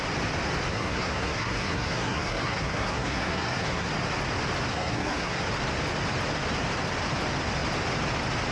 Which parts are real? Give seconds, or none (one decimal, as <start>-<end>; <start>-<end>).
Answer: 0.0-0.7; 3.9-4.7; 5.4-8.5